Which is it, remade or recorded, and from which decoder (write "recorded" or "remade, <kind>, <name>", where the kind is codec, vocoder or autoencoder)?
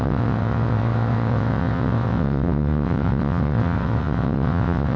remade, vocoder, WaveNeXt